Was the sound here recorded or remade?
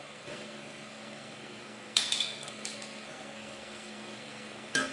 remade